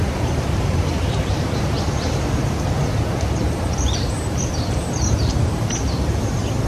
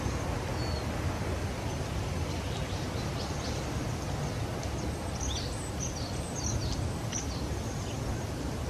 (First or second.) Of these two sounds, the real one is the second